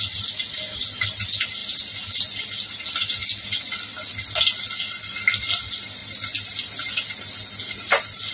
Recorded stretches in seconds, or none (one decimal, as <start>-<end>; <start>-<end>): 0.0-8.3